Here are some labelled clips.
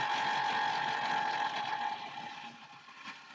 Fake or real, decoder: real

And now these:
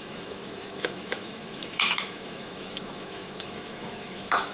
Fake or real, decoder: fake, autoencoder, DAC-VAE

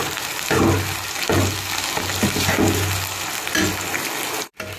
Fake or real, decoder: real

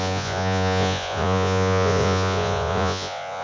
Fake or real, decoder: fake, vocoder, Vocos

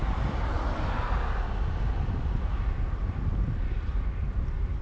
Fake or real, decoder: real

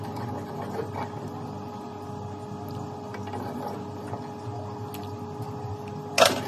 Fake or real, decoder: real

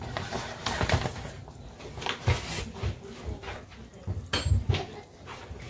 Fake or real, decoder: real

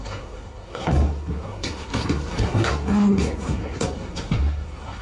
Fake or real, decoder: fake, codec, SNAC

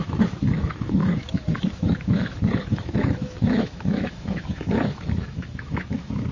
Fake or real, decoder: fake, autoencoder, DAC-VAE